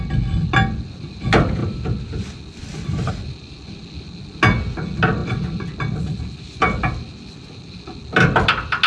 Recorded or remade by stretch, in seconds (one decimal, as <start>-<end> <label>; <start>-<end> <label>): 0.0-8.9 recorded